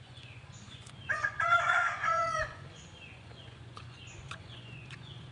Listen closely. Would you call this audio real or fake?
fake